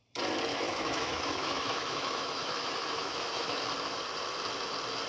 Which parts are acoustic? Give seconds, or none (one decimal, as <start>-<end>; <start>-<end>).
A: 0.0-0.5; 3.6-5.1